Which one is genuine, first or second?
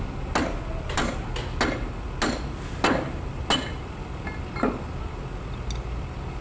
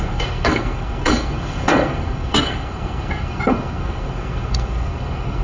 first